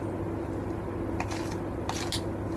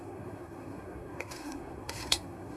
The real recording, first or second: first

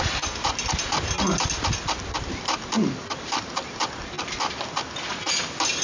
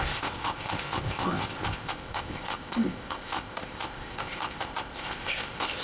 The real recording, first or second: first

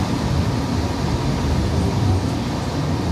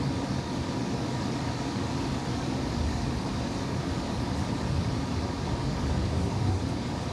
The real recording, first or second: first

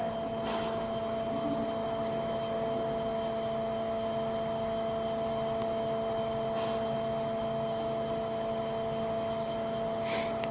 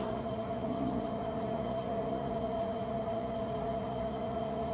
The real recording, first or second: first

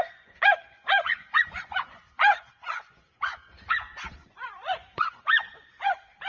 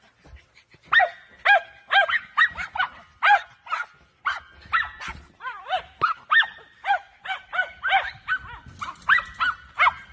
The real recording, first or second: second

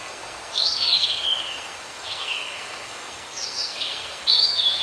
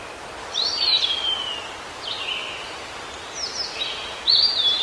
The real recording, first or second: second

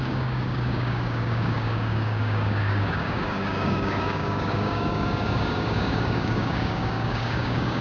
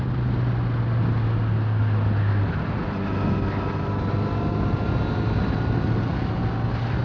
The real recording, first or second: second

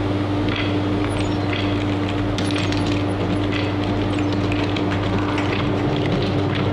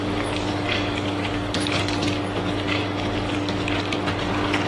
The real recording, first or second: first